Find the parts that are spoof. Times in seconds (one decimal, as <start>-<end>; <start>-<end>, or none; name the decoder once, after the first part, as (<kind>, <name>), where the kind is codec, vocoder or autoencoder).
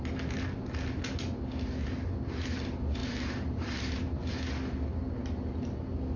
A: 3.0-4.3 (vocoder, BigVGAN v2)